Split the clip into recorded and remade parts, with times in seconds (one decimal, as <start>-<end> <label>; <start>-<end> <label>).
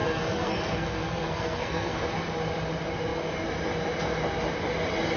0.0-2.1 remade; 2.1-5.2 recorded